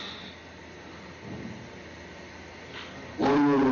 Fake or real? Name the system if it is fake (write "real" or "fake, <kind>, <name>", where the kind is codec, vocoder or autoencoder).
real